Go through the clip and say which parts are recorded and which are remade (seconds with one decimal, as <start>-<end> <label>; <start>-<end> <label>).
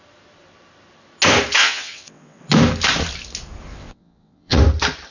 0.0-1.6 recorded; 1.6-2.4 remade; 2.4-3.7 recorded; 3.7-4.6 remade; 4.6-5.1 recorded